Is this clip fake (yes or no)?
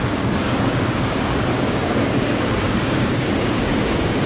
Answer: yes